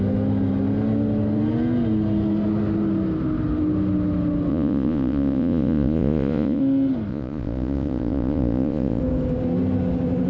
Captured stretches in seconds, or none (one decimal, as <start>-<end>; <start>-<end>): 0.0-4.5; 6.6-7.1; 9.0-10.3